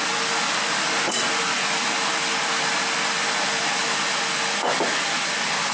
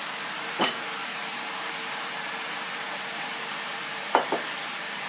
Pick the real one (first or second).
first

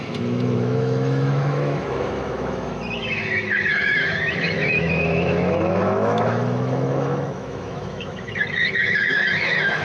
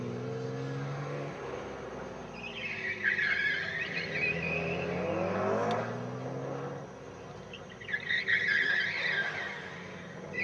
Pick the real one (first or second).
second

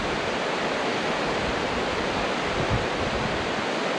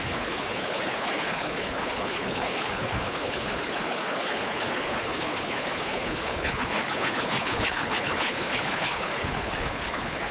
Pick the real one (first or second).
first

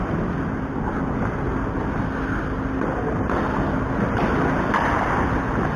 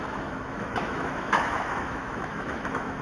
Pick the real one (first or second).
first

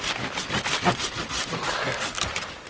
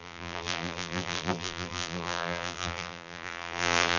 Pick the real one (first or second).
first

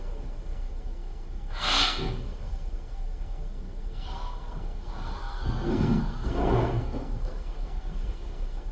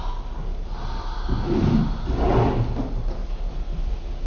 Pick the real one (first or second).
second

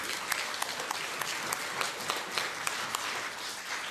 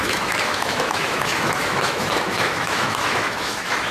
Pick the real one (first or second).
first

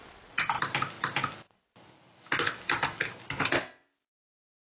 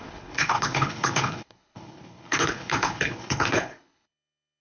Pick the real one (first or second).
first